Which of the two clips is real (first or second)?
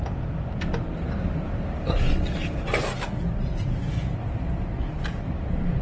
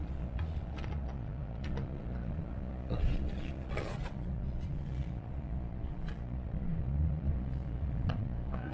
first